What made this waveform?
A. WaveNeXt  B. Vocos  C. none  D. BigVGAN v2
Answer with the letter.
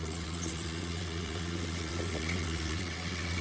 A